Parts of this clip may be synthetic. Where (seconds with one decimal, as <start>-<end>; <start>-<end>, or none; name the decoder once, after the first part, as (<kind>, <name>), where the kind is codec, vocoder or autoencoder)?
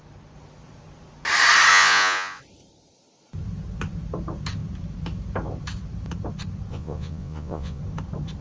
1.7-2.4 (vocoder, Vocos); 6.7-7.8